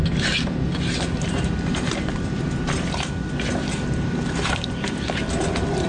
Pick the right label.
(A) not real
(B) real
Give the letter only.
B